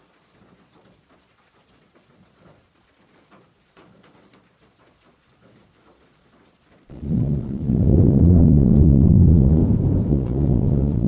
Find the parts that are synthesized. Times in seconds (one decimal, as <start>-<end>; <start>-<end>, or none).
0.0-9.6; 10.1-11.1